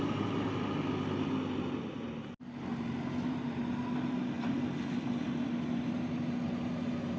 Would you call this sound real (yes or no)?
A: yes